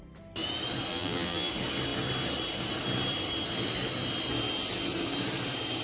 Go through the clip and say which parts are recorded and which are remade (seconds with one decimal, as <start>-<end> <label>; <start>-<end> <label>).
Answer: 0.0-0.9 recorded; 0.9-1.5 remade; 1.5-5.8 recorded